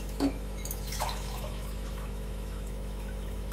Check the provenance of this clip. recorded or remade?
remade